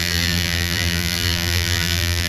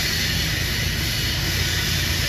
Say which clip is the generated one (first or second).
first